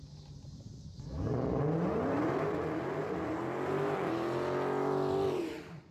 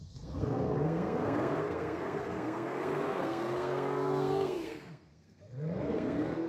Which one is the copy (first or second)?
second